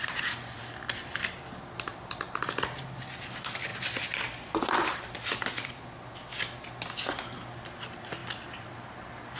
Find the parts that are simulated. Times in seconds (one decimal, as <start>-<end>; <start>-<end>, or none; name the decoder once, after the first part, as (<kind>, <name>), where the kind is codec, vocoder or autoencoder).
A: 0.0-0.6 (vocoder, BigVGAN v2); 1.9-2.8; 3.7-6.1; 8.2-8.7